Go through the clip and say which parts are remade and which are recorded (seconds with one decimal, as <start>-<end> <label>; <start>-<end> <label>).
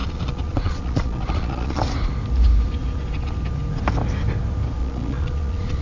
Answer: 0.0-1.8 remade; 1.8-4.8 recorded; 4.8-5.8 remade